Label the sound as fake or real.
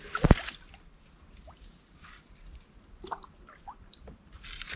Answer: real